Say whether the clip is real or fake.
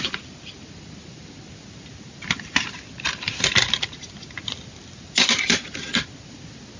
real